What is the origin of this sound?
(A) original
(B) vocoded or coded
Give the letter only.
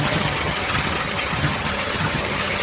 B